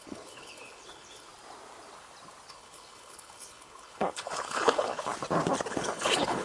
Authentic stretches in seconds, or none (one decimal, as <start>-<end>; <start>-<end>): 1.3-2.5; 5.1-5.7